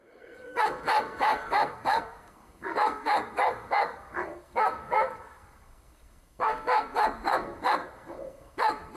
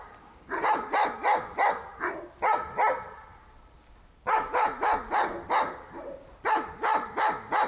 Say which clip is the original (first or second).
second